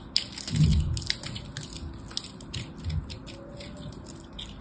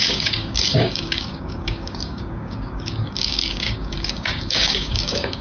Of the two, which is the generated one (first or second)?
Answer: second